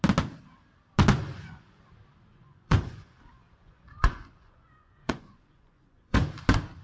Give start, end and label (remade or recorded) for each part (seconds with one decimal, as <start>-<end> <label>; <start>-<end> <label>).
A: 0.0-1.2 recorded; 1.2-1.8 remade; 1.8-2.3 recorded; 2.3-6.3 remade; 6.3-6.8 recorded